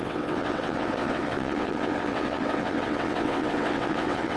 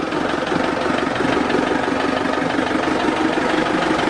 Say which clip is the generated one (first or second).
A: first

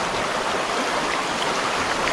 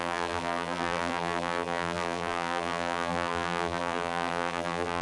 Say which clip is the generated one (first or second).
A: second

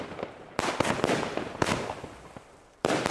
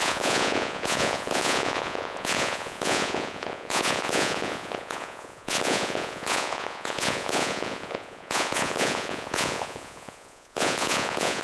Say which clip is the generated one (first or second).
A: second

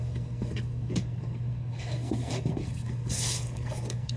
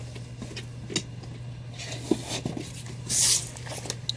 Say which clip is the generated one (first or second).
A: first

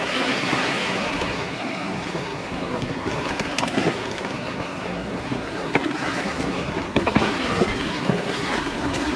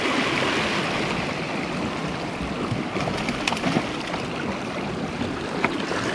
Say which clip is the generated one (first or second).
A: first